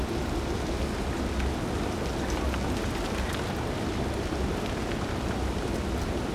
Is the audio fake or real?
real